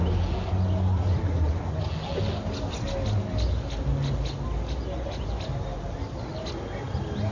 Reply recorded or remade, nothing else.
recorded